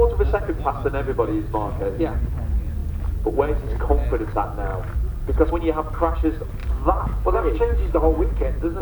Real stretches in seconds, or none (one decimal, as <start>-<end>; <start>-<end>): 0.0-6.6